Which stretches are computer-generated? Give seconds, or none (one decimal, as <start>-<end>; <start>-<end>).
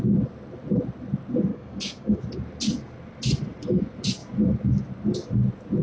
1.5-2.2